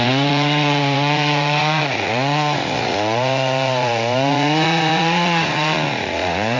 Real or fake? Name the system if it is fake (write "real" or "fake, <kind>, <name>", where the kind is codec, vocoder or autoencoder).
fake, vocoder, Vocos